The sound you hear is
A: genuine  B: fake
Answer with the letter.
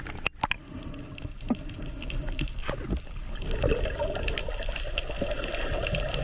A